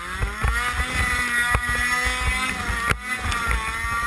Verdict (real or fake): real